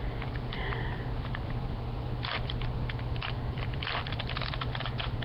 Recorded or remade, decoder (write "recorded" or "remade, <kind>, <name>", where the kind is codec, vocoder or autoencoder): remade, vocoder, BigVGAN v2